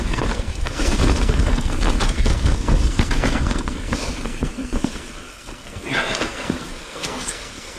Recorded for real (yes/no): no